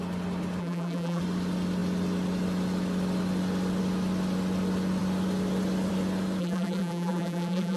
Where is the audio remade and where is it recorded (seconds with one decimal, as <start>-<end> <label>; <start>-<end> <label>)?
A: 0.0-0.6 recorded; 0.6-1.2 remade; 1.2-6.4 recorded; 6.4-7.8 remade